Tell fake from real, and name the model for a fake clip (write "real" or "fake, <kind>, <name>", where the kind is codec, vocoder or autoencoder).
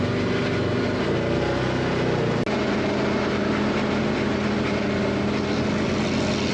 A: real